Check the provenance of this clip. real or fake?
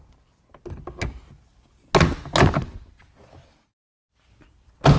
real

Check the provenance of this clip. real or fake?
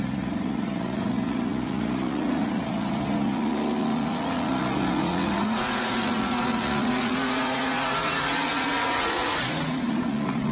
fake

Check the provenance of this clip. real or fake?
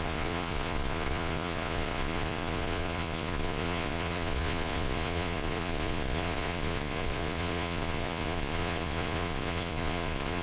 fake